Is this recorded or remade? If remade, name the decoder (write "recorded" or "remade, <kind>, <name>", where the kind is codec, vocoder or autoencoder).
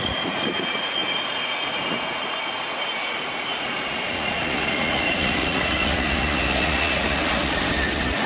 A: remade, vocoder, Vocos